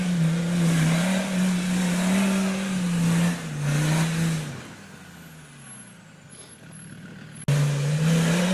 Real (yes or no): yes